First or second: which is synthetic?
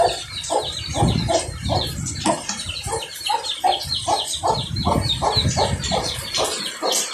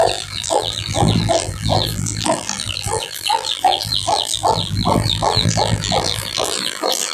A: second